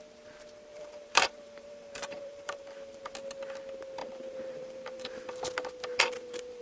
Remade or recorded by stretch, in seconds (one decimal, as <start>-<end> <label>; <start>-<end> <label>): 0.0-0.7 recorded; 0.7-3.1 remade; 3.1-4.0 recorded; 4.0-5.4 remade; 5.4-5.9 recorded; 5.9-6.6 remade

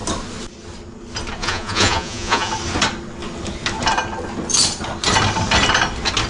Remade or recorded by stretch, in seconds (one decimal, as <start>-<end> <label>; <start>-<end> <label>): 0.0-1.4 recorded; 1.4-2.5 remade; 2.5-6.3 recorded

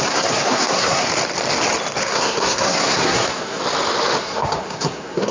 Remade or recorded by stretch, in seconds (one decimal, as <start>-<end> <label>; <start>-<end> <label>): 0.0-1.1 remade; 1.1-2.0 recorded; 2.0-3.6 remade; 3.6-4.2 recorded; 4.2-5.3 remade

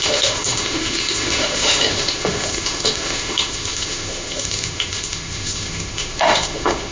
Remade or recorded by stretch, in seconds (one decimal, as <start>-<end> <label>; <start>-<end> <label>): 0.0-6.9 remade

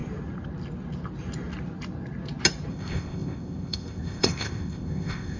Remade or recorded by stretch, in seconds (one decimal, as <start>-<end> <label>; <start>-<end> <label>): 0.0-2.7 recorded; 2.7-5.4 remade

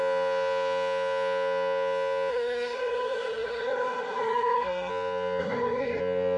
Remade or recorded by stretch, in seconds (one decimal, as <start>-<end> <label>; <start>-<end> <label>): 0.0-2.3 recorded; 2.3-4.9 remade; 4.9-5.4 recorded; 5.4-6.0 remade; 6.0-6.4 recorded

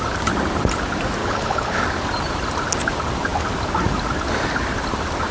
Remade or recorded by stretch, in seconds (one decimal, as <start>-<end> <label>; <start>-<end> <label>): 0.0-1.2 recorded; 1.2-1.8 remade; 1.8-5.3 recorded

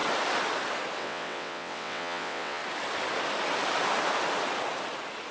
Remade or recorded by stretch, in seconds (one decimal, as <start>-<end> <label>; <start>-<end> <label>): 0.0-1.0 recorded; 1.0-2.6 remade; 2.6-5.3 recorded